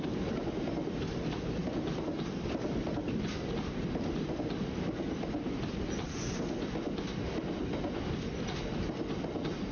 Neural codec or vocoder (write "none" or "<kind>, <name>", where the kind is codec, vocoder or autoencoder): none